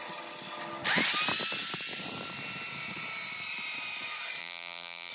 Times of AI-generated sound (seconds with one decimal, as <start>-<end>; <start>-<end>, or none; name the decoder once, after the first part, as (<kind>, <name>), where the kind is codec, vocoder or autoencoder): 4.4-5.1 (vocoder, BigVGAN v2)